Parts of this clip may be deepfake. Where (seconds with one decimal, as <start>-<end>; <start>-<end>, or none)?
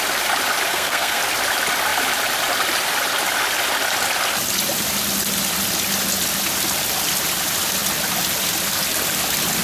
0.7-1.2